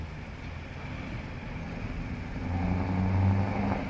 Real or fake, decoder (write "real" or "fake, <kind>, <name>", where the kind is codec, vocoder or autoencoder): real